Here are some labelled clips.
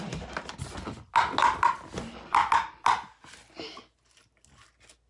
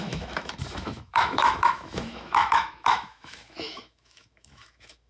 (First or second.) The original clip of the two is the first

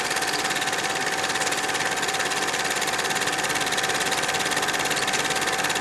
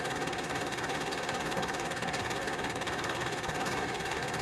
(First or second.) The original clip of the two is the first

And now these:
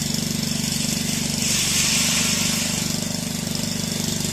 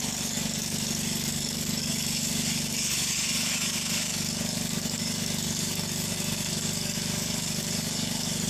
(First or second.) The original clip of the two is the first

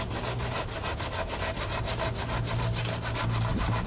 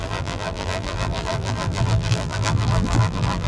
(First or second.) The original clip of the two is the first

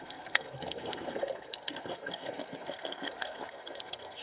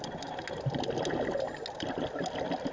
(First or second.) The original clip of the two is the second